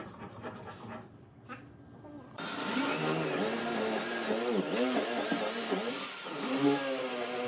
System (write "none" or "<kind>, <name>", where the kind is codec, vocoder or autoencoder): none